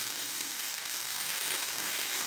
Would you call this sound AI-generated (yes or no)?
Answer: yes